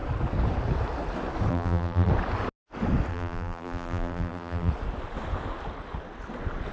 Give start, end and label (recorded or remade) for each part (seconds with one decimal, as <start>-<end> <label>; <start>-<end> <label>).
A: 0.0-1.5 recorded; 1.5-2.1 remade; 2.1-3.1 recorded; 3.1-4.7 remade; 4.7-6.7 recorded